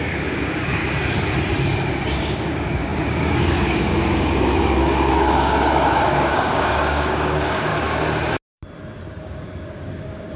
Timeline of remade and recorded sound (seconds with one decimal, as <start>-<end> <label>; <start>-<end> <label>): 0.0-0.8 remade; 0.8-1.9 recorded; 1.9-7.7 remade; 7.7-9.1 recorded; 9.1-10.4 remade